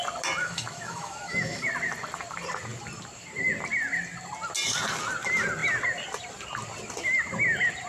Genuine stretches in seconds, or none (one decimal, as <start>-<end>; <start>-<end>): 0.0-0.4; 1.7-7.9